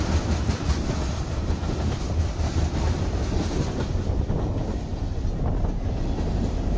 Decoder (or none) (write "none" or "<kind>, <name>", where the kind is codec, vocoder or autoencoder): none